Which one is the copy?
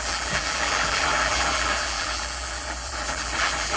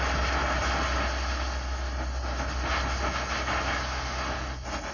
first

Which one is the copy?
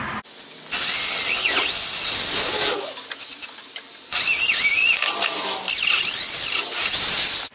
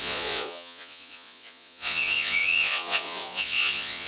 second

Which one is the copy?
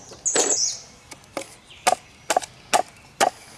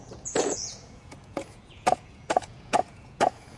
second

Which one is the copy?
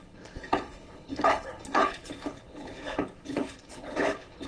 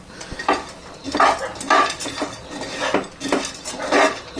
first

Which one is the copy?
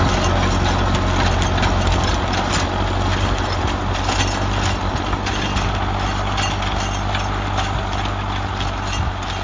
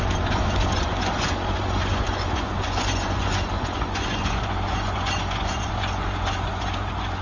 second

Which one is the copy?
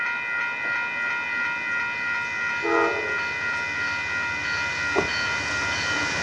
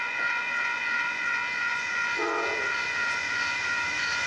second